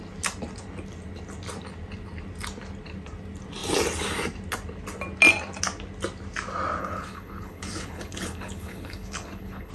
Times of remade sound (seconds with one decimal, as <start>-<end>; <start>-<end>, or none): 6.8-9.7